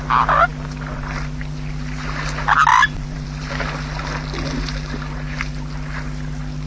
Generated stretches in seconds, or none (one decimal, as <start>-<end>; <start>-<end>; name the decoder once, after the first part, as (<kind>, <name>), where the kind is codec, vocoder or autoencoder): 0.5-1.2 (vocoder, BigVGAN v2); 2.7-3.5

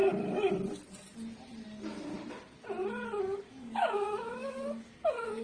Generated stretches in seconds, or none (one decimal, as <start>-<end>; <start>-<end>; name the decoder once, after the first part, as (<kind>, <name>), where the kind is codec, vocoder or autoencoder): 3.2-5.4 (codec, DAC)

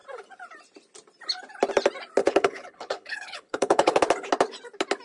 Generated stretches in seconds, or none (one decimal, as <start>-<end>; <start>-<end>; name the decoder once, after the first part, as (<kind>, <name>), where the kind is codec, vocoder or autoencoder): 2.2-4.0 (codec, HILCodec)